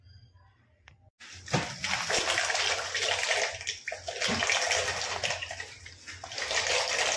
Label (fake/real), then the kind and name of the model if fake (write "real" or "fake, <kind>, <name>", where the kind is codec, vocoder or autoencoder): real